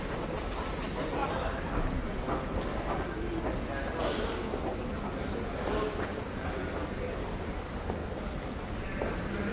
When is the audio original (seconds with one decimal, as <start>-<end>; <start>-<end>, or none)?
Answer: 0.0-8.0; 8.6-9.5